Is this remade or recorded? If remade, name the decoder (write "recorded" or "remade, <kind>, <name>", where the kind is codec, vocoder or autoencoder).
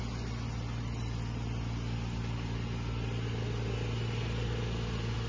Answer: recorded